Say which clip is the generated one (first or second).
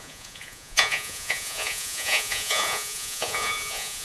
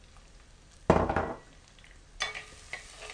first